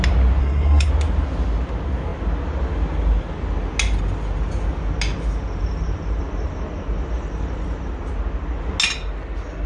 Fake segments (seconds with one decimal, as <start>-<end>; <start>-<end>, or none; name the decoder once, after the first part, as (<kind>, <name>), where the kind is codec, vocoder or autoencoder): 0.4-0.9 (codec, SNAC)